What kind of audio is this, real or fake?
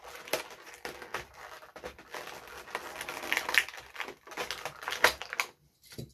real